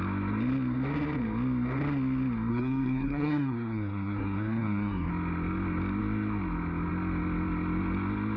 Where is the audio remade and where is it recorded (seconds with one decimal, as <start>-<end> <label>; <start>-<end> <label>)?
0.0-2.5 recorded; 2.5-5.1 remade; 5.1-8.4 recorded